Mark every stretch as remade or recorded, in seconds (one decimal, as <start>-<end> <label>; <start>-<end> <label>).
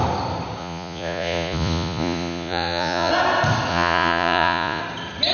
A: 0.0-0.6 recorded; 0.6-3.1 remade; 3.1-3.7 recorded; 3.7-4.8 remade; 4.8-5.3 recorded